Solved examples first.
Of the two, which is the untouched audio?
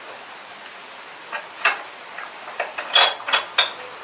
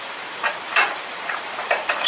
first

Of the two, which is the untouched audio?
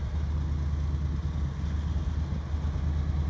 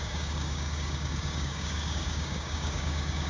first